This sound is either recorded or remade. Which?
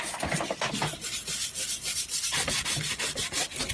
recorded